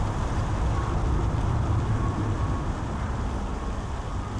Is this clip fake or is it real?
real